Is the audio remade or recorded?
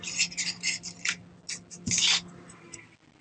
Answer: recorded